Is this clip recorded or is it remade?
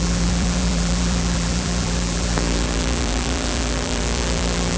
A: remade